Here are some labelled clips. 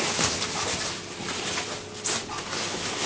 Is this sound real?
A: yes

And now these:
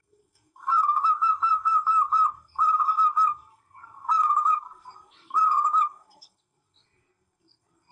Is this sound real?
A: no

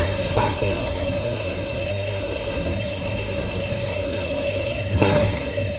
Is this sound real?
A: no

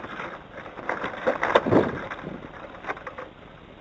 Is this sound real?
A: yes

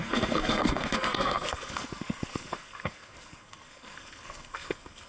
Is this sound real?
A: no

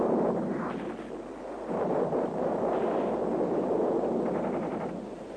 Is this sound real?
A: yes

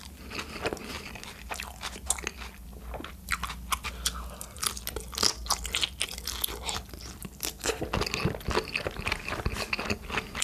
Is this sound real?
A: yes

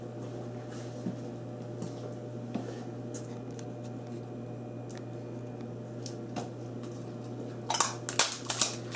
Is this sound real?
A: yes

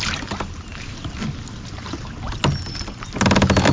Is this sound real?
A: yes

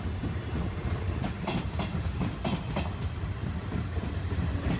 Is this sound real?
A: yes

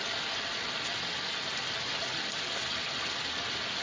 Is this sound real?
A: yes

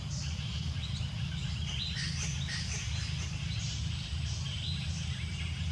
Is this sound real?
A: yes